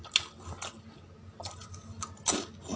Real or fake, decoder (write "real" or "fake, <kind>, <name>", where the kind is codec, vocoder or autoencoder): real